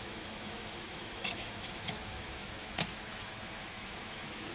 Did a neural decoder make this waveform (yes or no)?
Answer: yes